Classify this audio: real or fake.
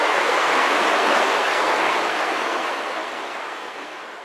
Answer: fake